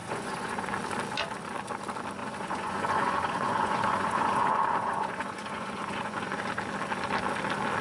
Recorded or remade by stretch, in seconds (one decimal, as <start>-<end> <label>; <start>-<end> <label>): 0.0-0.7 remade; 0.7-2.2 recorded; 2.2-6.4 remade; 6.4-7.8 recorded